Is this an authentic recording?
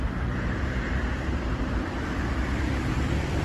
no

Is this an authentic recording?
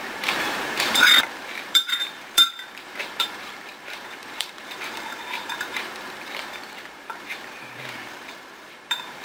no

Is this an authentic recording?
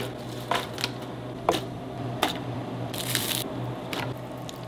no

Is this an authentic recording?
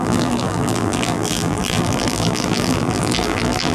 no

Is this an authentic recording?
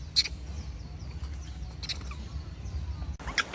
yes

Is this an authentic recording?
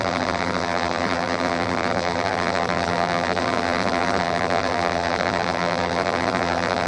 no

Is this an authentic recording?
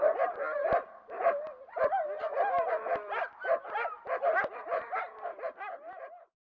yes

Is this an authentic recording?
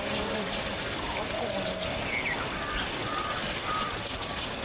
yes